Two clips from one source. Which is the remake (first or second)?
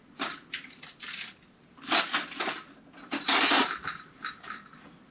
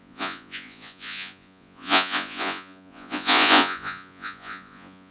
second